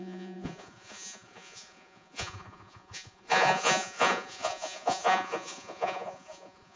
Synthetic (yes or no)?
yes